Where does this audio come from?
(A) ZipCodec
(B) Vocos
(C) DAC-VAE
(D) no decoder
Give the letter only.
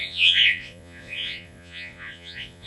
B